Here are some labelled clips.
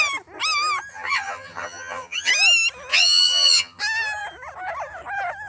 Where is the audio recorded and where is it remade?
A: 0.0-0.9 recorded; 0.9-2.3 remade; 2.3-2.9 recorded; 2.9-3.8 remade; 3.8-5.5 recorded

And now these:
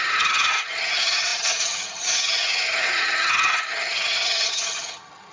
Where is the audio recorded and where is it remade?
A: 0.0-5.3 remade

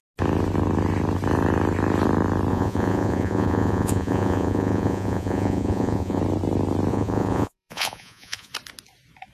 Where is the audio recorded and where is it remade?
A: 0.0-2.5 recorded; 2.5-6.2 remade; 6.2-6.9 recorded; 6.9-8.5 remade; 8.5-9.3 recorded

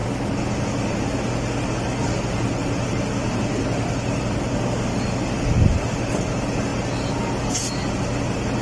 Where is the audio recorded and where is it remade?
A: 0.0-8.6 recorded

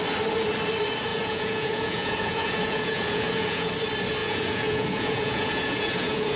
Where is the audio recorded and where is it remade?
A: 0.0-1.1 recorded; 1.1-3.7 remade; 3.7-4.2 recorded; 4.2-6.4 remade

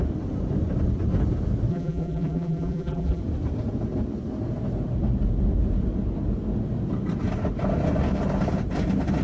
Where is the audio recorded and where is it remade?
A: 0.0-1.7 recorded; 1.7-3.2 remade; 3.2-9.2 recorded